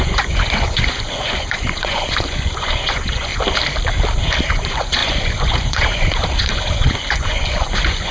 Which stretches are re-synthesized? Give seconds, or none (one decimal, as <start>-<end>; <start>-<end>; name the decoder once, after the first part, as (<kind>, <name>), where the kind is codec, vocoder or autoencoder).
0.0-3.3 (vocoder, Vocos); 4.5-8.1